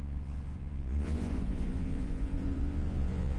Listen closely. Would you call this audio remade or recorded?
remade